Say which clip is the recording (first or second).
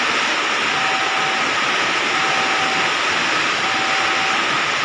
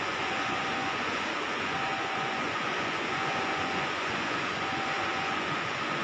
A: first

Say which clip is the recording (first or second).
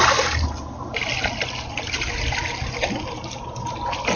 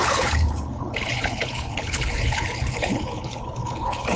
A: first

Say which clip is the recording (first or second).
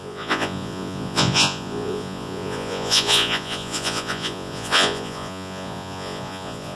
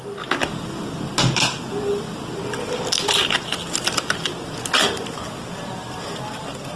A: second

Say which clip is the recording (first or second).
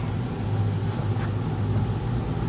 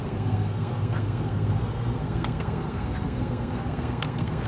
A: first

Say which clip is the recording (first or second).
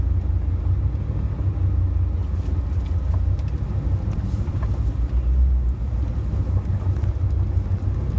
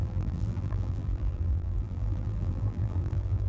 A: first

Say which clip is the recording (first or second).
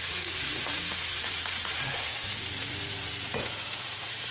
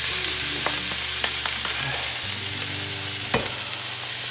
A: second